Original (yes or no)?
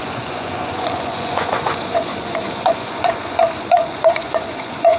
no